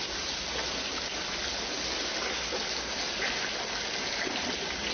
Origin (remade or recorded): recorded